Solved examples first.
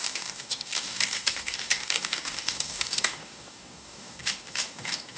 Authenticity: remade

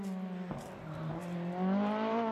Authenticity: recorded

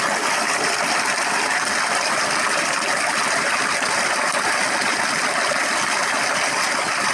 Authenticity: recorded